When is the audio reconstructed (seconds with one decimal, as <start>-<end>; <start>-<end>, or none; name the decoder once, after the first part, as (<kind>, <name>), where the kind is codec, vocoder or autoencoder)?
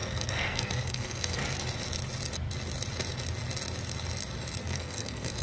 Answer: 0.0-1.4 (codec, SNAC); 4.6-5.4